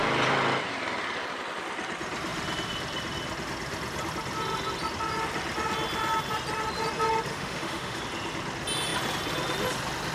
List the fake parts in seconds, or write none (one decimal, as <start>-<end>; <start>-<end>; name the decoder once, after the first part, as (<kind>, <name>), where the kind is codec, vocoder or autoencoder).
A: 7.3-8.0 (autoencoder, DAC-VAE)